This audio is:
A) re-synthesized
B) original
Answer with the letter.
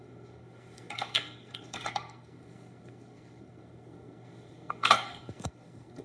A